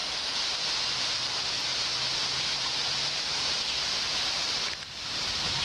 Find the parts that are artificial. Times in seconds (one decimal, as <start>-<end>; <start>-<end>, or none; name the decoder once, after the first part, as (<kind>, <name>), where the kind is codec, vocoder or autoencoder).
none